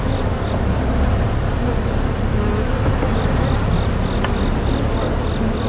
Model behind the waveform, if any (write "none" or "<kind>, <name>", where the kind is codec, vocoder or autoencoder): none